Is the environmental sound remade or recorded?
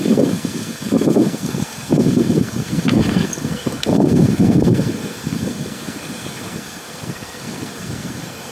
remade